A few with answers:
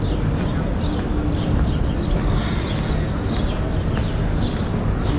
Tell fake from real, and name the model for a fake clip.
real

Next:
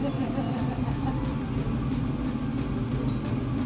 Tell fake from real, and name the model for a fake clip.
real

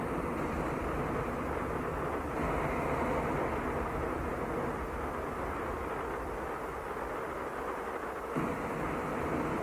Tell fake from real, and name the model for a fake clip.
real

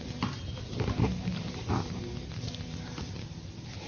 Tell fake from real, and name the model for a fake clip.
real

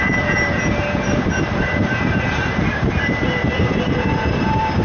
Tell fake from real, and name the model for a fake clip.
fake, vocoder, BigVGAN v2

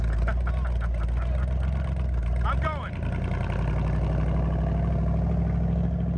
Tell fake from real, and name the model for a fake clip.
real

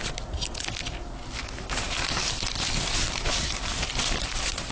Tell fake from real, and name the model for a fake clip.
real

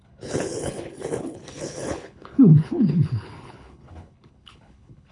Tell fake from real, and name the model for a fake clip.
fake, codec, HILCodec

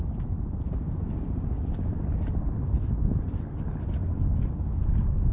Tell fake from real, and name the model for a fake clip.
real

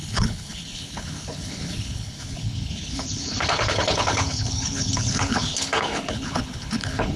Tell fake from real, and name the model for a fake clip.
fake, codec, HILCodec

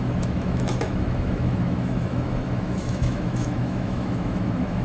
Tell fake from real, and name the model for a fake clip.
fake, autoencoder, DAC-VAE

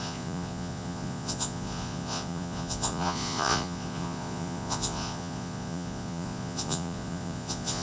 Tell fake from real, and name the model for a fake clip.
fake, vocoder, Vocos